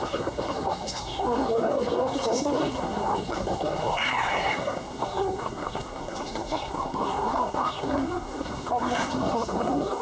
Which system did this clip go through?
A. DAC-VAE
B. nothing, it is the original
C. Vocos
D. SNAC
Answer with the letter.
D